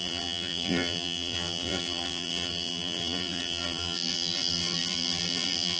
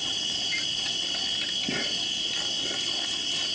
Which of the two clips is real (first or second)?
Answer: second